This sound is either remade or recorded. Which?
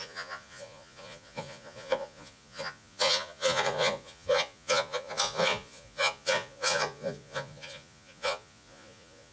remade